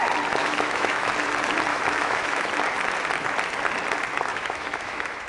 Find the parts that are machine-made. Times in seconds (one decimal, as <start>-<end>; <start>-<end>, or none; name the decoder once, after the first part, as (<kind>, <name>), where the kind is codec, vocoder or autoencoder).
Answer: 0.4-1.1 (autoencoder, DAC-VAE); 1.7-2.5; 4.3-5.3